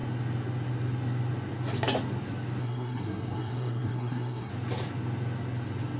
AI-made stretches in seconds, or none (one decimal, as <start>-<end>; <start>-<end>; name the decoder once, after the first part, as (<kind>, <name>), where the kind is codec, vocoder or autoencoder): 2.6-4.5 (codec, SNAC)